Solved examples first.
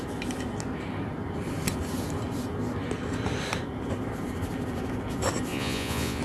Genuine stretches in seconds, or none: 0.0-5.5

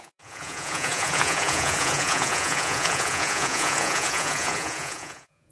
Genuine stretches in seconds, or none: none

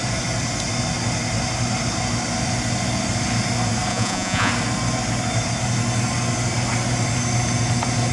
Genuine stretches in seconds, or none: 0.0-3.9; 4.5-8.1

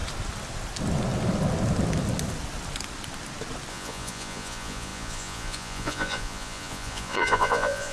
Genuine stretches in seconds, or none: 0.0-3.7

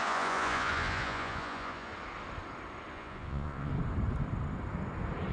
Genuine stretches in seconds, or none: 1.9-2.9; 3.7-5.3

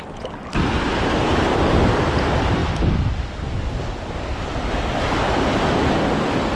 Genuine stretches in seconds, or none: 0.0-6.6

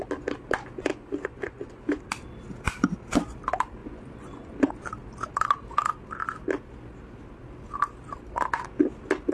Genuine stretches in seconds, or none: 0.0-0.9; 2.0-3.8; 4.7-9.3